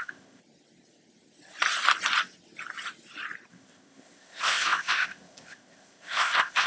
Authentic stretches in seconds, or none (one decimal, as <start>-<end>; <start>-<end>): 0.4-3.5